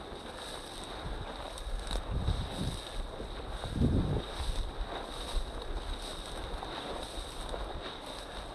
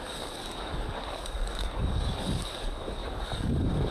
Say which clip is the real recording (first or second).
first